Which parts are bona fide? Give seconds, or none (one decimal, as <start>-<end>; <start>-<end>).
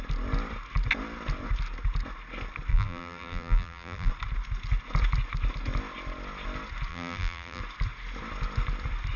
0.0-2.7; 4.1-6.9; 7.6-9.2